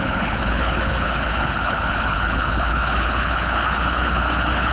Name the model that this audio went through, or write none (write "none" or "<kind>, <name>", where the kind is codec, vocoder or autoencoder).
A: codec, HILCodec